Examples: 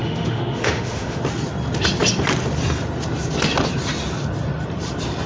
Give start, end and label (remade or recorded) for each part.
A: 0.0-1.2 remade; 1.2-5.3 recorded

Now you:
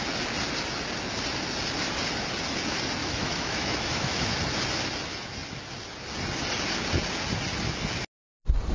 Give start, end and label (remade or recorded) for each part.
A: 0.0-3.0 recorded; 3.0-4.4 remade; 4.4-8.7 recorded

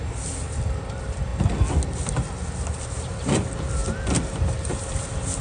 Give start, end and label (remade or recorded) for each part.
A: 0.0-1.3 remade; 1.3-2.9 recorded; 2.9-3.8 remade; 3.8-4.8 recorded; 4.8-5.4 remade

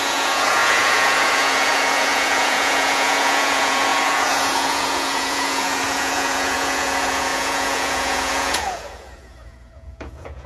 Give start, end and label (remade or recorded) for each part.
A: 0.0-10.5 remade

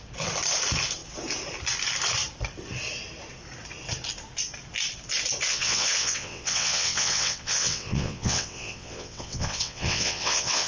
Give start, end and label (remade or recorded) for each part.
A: 0.0-5.5 recorded; 5.5-10.7 remade

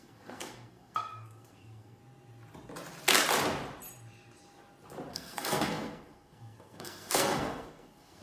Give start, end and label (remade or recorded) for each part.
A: 0.0-2.0 remade; 2.0-5.1 recorded; 5.1-8.2 remade

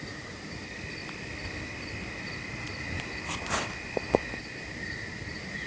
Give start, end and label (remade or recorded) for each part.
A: 0.0-5.7 recorded